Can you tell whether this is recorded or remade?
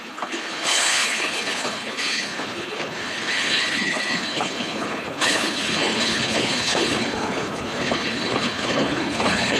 remade